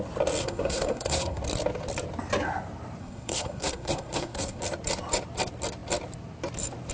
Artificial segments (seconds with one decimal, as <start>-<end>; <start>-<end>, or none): 0.4-1.4; 3.0-4.6